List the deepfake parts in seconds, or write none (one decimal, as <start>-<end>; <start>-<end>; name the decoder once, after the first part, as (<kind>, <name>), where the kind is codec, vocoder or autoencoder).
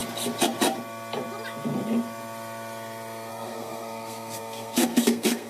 3.3-5.5 (codec, SNAC)